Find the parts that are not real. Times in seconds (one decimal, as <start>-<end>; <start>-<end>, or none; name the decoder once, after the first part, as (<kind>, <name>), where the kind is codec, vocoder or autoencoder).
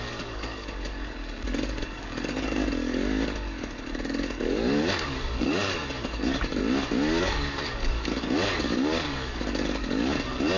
0.0-6.6 (codec, DAC); 7.2-10.6